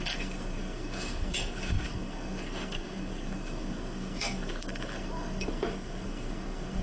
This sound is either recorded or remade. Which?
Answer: remade